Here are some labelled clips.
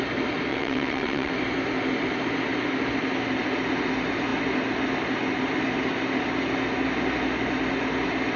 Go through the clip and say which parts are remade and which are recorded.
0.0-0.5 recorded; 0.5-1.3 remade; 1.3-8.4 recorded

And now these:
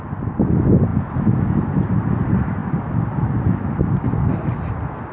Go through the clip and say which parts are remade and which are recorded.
0.0-5.1 recorded

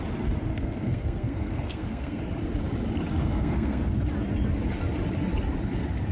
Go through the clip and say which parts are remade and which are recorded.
0.0-0.5 recorded; 0.5-2.2 remade; 2.2-3.2 recorded; 3.2-3.9 remade; 3.9-6.1 recorded

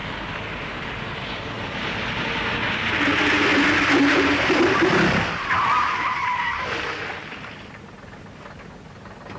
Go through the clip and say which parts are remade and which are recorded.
0.0-9.4 recorded

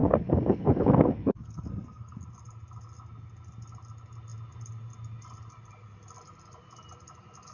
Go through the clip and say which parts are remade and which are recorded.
0.0-2.2 remade; 2.2-7.5 recorded

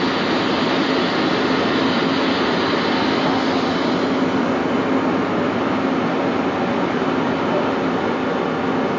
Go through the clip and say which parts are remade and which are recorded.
0.0-9.0 recorded

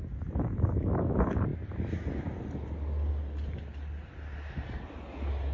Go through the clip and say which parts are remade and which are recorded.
0.0-5.5 recorded